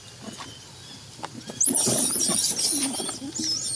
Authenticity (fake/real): real